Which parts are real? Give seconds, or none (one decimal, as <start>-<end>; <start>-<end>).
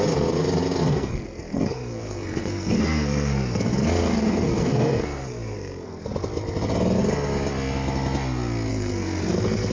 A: 0.0-0.9; 6.1-8.7